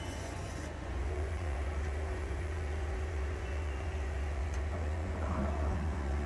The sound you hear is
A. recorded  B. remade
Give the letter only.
B